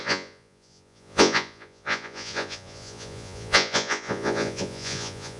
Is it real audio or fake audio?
fake